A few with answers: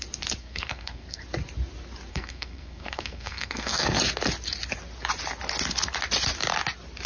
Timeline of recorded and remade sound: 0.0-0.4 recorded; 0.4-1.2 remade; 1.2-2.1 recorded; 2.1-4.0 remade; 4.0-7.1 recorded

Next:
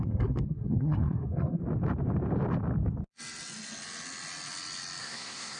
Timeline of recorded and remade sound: 0.0-1.6 remade; 1.6-5.0 recorded; 5.0-5.6 remade

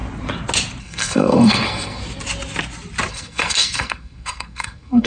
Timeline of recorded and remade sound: 0.0-0.8 recorded; 0.8-2.0 remade; 2.0-3.1 recorded; 3.1-5.1 remade

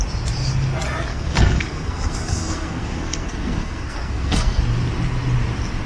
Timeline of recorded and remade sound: 0.0-1.1 recorded; 1.1-4.6 remade; 4.6-5.9 recorded

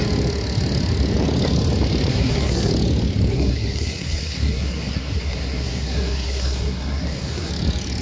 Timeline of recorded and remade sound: 0.0-2.1 recorded; 2.1-2.7 remade; 2.7-3.3 recorded; 3.3-7.5 remade; 7.5-8.0 recorded

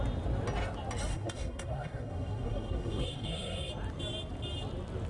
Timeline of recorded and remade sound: 0.0-1.1 recorded; 1.1-3.7 remade; 3.7-5.1 recorded

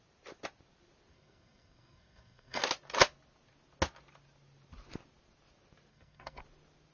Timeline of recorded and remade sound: 0.0-1.1 recorded; 1.1-2.6 remade; 2.6-5.9 recorded; 5.9-6.4 remade; 6.4-6.9 recorded